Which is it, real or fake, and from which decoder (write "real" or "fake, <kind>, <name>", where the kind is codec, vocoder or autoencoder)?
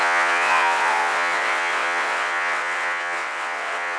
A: fake, vocoder, WaveNeXt